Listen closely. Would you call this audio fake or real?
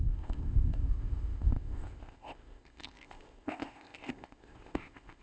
fake